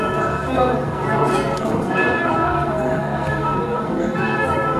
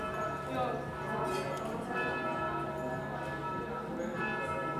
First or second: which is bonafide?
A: second